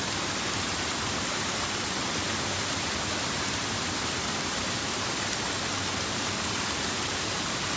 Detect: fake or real real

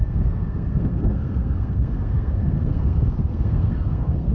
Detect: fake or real fake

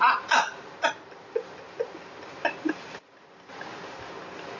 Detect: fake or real real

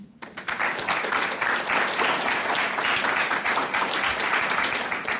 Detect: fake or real real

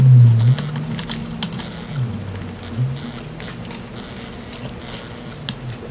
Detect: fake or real real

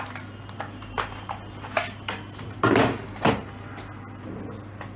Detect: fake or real real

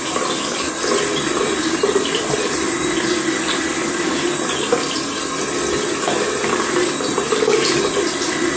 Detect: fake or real real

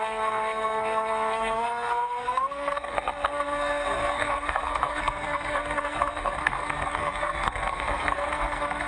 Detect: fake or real fake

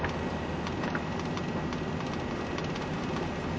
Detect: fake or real real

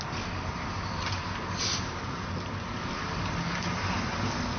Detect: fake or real real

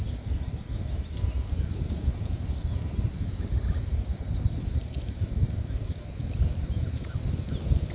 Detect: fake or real real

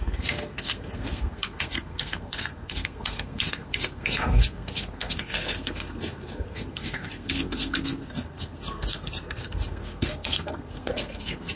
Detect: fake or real fake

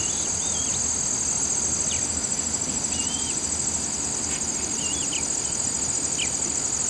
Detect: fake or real real